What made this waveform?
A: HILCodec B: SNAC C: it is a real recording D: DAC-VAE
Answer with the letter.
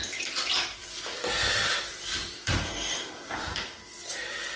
C